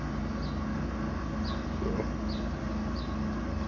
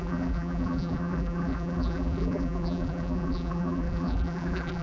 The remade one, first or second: second